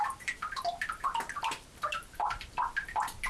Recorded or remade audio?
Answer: remade